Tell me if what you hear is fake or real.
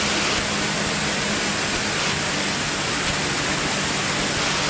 real